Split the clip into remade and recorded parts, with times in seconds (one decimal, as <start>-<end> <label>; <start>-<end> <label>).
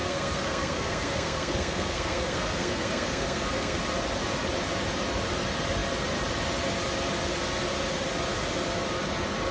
0.0-3.8 remade; 3.8-9.5 recorded